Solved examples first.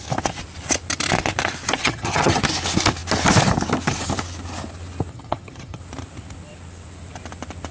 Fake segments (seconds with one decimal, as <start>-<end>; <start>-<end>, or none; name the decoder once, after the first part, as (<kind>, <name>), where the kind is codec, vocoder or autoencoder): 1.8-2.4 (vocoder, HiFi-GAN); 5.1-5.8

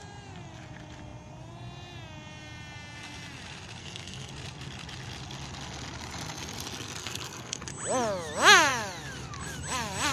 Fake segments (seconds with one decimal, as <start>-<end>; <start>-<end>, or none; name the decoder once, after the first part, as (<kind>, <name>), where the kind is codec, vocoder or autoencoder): 3.8-4.3 (codec, SNAC); 7.0-7.6

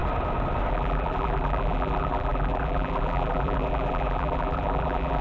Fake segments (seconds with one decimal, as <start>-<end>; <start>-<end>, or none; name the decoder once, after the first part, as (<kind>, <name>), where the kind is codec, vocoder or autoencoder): 0.7-5.2 (vocoder, BigVGAN v2)

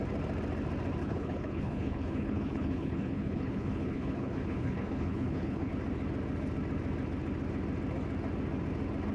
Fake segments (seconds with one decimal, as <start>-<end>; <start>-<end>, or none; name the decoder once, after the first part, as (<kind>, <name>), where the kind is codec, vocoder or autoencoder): 1.0-5.7 (codec, HILCodec)

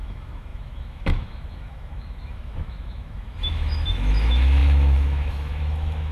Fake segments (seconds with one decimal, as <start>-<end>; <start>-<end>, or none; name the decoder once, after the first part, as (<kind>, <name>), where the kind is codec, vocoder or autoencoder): 0.0-6.1 (autoencoder, DAC-VAE)

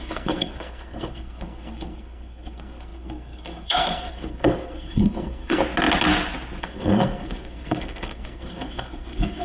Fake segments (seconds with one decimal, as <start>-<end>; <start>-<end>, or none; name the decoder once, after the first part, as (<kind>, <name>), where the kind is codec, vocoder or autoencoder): 0.0-5.6 (codec, SNAC); 6.6-9.4